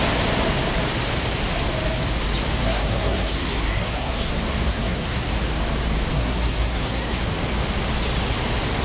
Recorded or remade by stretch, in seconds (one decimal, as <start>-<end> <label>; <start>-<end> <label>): 0.0-2.6 recorded; 2.6-4.3 remade; 4.3-4.7 recorded; 4.7-5.3 remade; 5.3-6.1 recorded; 6.1-7.2 remade; 7.2-8.8 recorded

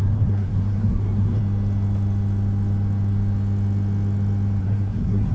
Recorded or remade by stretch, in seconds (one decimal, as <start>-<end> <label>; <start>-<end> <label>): 0.0-1.4 remade; 1.4-4.6 recorded; 4.6-5.3 remade

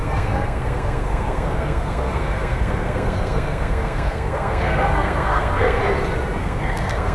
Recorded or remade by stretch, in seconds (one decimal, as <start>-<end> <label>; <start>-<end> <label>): 0.0-5.8 remade; 5.8-6.4 recorded; 6.4-7.1 remade

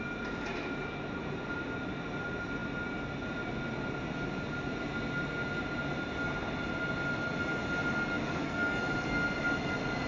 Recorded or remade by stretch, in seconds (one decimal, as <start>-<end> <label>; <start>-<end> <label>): 0.0-8.2 recorded; 8.2-8.8 remade; 8.8-10.1 recorded

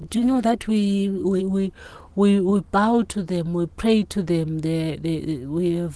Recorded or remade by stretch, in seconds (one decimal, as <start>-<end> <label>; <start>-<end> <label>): 0.0-1.4 remade; 1.4-6.0 recorded

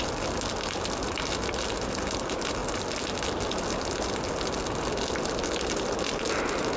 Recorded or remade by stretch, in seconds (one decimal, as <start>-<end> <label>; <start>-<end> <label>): 0.0-6.8 recorded

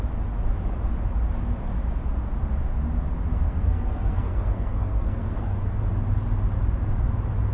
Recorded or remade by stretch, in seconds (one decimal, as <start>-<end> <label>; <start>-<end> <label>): 0.0-3.3 recorded; 3.3-5.8 remade; 5.8-7.5 recorded